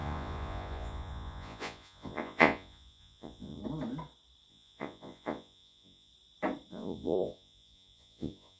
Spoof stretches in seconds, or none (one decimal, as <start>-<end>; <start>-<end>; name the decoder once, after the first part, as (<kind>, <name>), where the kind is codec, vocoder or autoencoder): 0.0-3.6 (vocoder, Vocos); 4.5-6.1; 6.7-8.6